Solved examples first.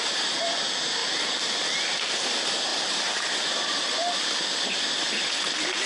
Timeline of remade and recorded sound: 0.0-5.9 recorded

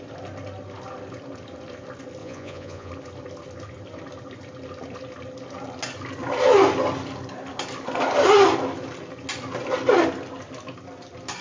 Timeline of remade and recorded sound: 0.0-2.2 recorded; 2.2-2.9 remade; 2.9-11.4 recorded

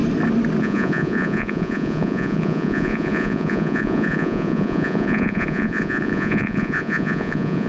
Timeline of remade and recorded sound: 0.0-0.6 recorded; 0.6-7.7 remade

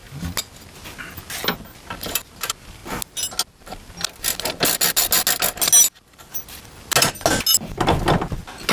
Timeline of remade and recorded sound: 0.0-8.7 recorded

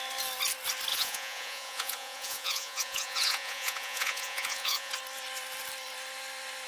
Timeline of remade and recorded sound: 0.0-0.9 recorded; 0.9-4.9 remade; 4.9-6.7 recorded

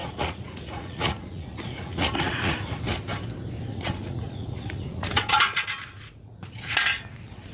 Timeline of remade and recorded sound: 0.0-2.8 remade; 2.8-3.7 recorded; 3.7-6.6 remade; 6.6-7.5 recorded

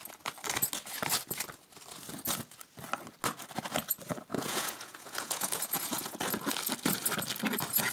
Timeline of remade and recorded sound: 0.0-4.3 recorded; 4.3-6.2 remade; 6.2-7.9 recorded

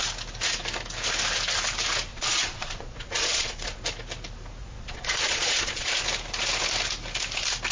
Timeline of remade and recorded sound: 0.0-2.1 recorded; 2.1-3.8 remade; 3.8-4.6 recorded; 4.6-6.0 remade; 6.0-7.7 recorded